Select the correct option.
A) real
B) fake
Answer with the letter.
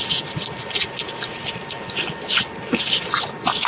A